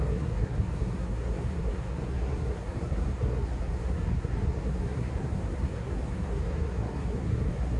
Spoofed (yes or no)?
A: yes